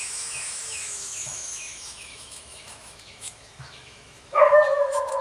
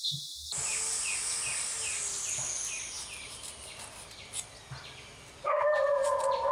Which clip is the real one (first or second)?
second